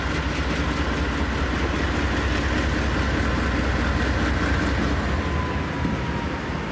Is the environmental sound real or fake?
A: real